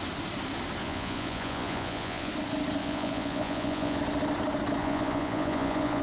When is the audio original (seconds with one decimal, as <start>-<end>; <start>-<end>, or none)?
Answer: 0.0-0.8; 2.3-2.8; 4.0-4.8